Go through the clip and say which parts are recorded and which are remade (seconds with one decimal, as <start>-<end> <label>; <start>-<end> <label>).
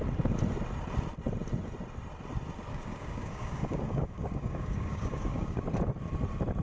0.0-2.7 recorded; 2.7-5.6 remade; 5.6-6.6 recorded